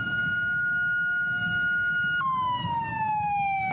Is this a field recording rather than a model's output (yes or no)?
no